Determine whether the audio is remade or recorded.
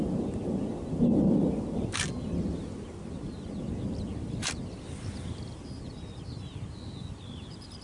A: recorded